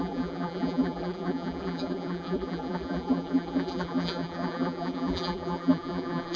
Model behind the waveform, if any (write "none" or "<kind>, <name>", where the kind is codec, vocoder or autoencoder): vocoder, BigVGAN v2